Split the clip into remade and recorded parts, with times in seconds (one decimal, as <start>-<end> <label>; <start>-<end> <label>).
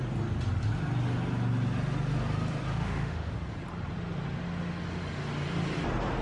0.0-2.7 recorded; 2.7-3.3 remade; 3.3-6.2 recorded